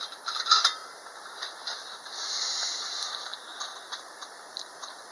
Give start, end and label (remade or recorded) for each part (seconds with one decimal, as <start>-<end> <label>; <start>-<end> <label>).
0.0-5.1 recorded